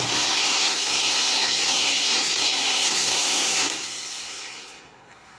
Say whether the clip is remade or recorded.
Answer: remade